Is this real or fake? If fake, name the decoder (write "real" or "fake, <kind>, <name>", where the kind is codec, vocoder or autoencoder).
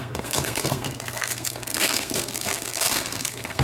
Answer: fake, codec, SNAC